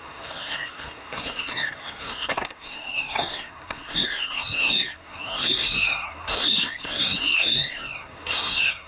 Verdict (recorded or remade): remade